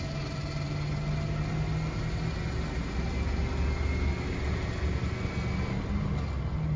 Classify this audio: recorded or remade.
recorded